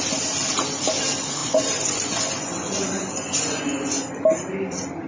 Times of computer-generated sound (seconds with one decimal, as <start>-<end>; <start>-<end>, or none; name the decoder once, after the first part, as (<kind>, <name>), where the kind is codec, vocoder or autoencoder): 1.4-4.1 (vocoder, Vocos)